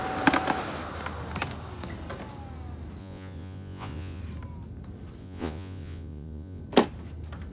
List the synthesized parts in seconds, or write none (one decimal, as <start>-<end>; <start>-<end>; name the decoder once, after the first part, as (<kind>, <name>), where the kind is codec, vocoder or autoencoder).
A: 3.0-4.2 (vocoder, Vocos); 5.2-6.6